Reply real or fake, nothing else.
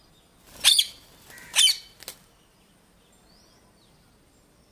real